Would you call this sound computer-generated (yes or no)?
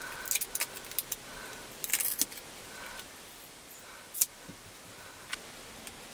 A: no